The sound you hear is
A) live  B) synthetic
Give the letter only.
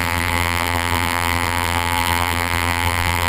B